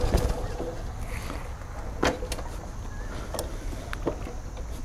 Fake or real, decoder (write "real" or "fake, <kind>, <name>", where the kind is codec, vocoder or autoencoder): real